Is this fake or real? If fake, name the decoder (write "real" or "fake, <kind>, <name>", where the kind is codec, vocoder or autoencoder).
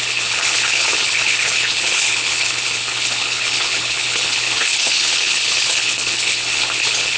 fake, codec, HILCodec